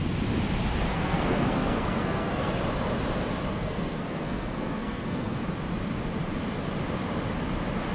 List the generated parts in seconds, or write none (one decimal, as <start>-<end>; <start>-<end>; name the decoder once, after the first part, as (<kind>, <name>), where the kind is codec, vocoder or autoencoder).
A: 0.9-2.5 (codec, SNAC); 3.5-5.4